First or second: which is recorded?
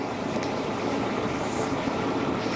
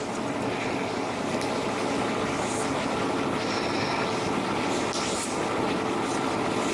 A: second